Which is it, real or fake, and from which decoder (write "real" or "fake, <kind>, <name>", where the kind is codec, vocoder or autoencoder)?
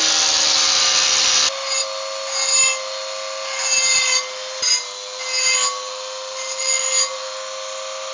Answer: real